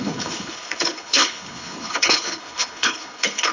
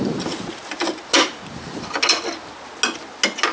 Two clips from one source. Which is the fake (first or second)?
first